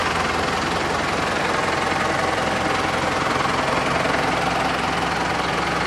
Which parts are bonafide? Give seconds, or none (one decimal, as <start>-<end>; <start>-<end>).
0.0-5.9

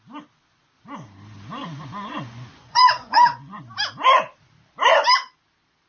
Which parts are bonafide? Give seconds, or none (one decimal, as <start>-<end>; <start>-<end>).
0.0-1.6; 3.6-5.9

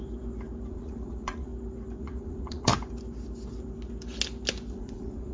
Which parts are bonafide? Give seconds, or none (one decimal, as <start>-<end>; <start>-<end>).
0.0-0.7; 1.5-2.0; 2.7-4.7